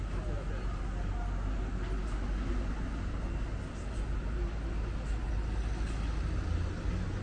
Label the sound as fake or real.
real